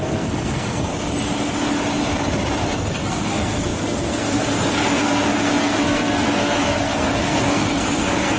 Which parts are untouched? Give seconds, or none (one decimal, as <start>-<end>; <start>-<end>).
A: 0.9-2.9